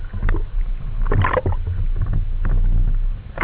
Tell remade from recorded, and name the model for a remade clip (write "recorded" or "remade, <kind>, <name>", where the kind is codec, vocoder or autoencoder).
recorded